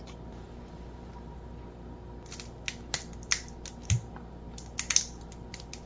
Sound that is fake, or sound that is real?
real